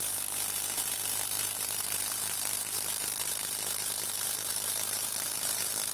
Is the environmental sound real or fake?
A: fake